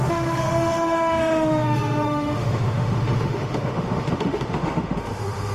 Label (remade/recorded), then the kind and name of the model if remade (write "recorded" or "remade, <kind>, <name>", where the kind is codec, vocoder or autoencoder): remade, autoencoder, DAC-VAE